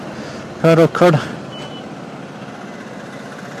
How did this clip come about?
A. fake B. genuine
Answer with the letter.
B